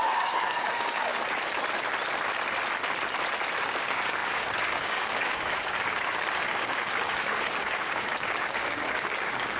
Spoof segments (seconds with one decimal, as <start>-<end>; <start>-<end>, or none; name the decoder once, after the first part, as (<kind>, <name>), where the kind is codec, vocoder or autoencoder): 0.0-1.1 (codec, DAC); 3.6-9.6